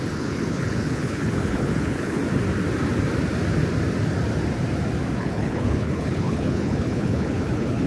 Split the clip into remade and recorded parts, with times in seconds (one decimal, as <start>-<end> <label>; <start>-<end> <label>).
0.0-2.2 remade; 2.2-5.2 recorded; 5.2-7.9 remade